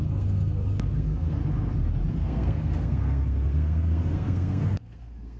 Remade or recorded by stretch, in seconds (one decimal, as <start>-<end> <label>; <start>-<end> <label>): 0.0-1.4 remade; 1.4-2.1 recorded; 2.1-5.4 remade